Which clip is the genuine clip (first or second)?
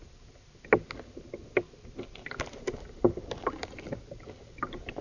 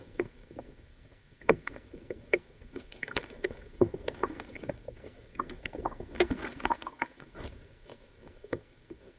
first